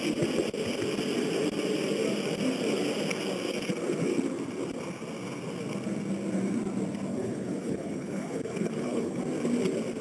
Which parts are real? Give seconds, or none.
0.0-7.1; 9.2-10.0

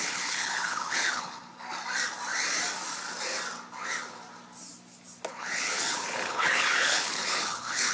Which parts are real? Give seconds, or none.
1.5-5.3

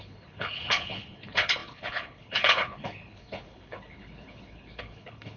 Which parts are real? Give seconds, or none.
none